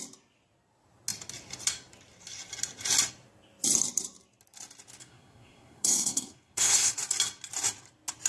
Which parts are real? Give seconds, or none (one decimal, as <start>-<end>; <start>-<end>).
0.0-5.0; 6.9-8.3